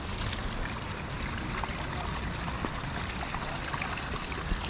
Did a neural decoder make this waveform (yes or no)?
no